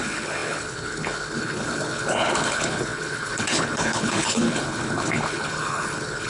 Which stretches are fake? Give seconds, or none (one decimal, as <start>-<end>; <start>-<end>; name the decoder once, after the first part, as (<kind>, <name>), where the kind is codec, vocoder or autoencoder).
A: 0.0-6.3 (codec, HILCodec)